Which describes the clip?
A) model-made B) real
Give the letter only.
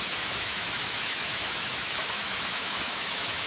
A